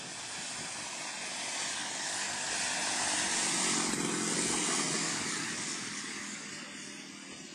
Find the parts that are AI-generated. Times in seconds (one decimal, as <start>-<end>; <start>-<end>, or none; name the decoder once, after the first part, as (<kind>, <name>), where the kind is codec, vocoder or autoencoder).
1.7-2.5 (codec, DAC); 5.0-6.5